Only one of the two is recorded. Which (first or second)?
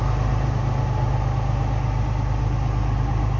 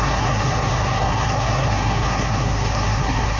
first